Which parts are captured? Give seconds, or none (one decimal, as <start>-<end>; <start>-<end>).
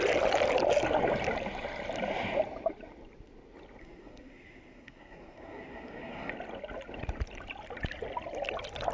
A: 0.0-3.8; 6.3-8.9